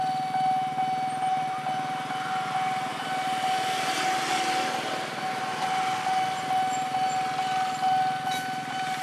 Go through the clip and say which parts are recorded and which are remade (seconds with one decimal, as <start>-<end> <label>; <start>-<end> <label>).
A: 0.0-9.0 recorded